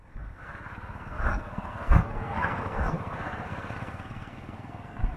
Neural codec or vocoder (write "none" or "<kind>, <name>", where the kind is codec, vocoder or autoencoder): codec, SNAC